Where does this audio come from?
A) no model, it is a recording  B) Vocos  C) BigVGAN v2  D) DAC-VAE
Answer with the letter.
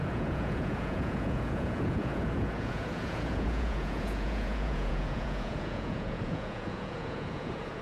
B